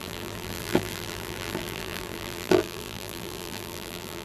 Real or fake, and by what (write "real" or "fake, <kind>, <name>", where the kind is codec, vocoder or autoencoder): fake, vocoder, BigVGAN v2